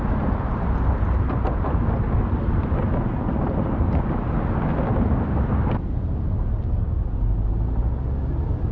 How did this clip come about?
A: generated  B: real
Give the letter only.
B